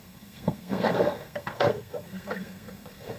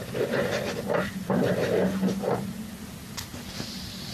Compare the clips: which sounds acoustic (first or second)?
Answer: second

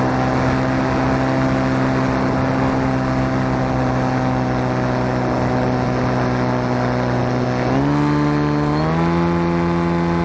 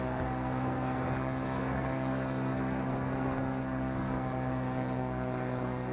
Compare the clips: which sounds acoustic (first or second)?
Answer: first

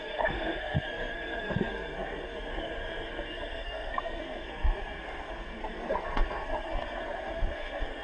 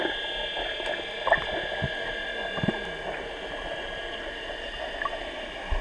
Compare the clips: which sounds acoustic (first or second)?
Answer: second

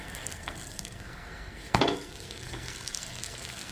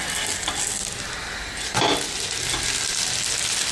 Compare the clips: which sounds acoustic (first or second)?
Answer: second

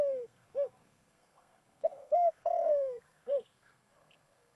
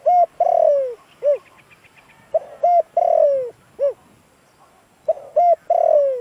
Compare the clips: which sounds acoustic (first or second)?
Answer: second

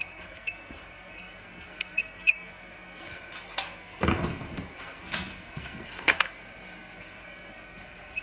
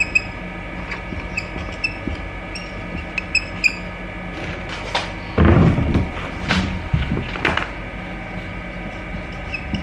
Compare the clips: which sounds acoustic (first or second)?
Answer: second